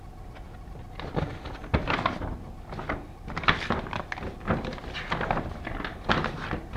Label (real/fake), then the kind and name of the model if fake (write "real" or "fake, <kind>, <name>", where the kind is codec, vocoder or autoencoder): real